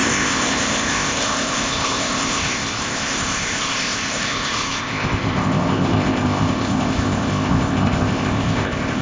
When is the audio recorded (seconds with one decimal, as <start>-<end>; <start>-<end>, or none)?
none